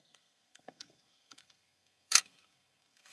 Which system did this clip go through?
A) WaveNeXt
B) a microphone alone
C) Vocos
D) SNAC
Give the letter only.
D